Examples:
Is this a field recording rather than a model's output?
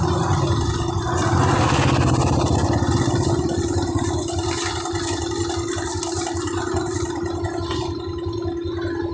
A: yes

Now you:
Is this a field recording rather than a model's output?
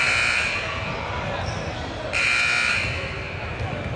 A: yes